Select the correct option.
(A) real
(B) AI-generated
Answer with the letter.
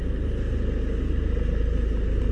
A